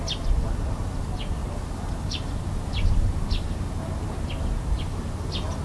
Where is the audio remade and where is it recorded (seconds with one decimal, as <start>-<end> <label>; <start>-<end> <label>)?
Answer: 0.0-1.4 recorded; 1.4-4.3 remade; 4.3-5.6 recorded